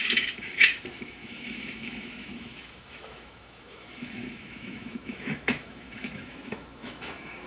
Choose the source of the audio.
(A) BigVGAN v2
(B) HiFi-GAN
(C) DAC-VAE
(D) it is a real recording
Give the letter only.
C